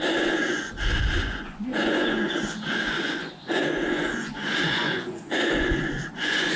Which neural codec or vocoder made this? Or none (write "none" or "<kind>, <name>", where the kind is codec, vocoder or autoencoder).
vocoder, Vocos